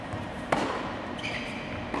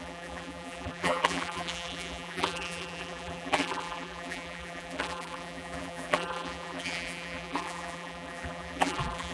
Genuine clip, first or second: first